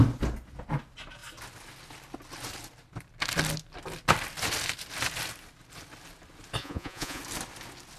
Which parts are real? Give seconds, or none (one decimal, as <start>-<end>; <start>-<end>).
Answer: 0.0-6.6; 7.2-8.0